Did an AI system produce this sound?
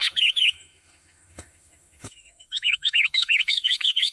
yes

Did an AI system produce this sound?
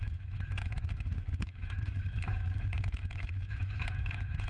yes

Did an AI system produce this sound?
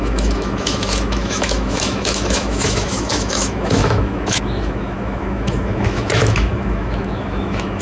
yes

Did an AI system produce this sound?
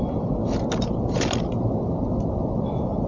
no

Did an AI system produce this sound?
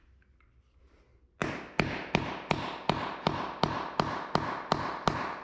no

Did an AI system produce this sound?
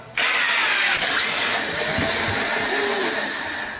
no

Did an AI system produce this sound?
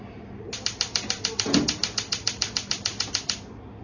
no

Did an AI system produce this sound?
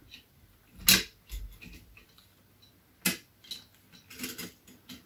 no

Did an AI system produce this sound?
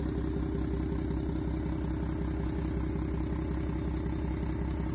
no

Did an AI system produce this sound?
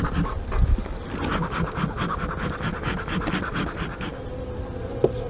no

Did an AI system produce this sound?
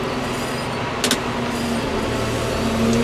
no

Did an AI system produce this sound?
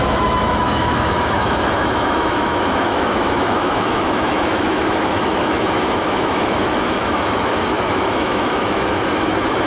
yes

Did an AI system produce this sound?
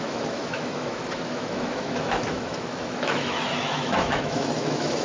yes